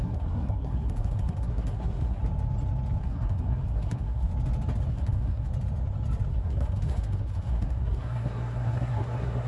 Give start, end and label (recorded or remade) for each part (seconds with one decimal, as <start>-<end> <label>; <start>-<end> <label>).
0.0-2.2 remade; 2.2-3.0 recorded; 3.0-4.3 remade; 4.3-4.9 recorded; 4.9-5.5 remade; 5.5-6.3 recorded; 6.3-9.5 remade

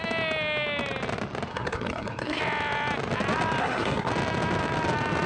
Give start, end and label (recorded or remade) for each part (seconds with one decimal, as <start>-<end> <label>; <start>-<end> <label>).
0.0-1.5 recorded; 1.5-2.4 remade; 2.4-3.6 recorded; 3.6-4.1 remade; 4.1-5.3 recorded